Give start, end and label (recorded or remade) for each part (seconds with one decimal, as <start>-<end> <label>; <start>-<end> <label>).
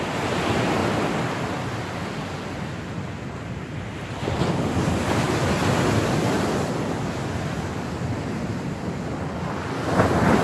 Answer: 0.0-10.4 recorded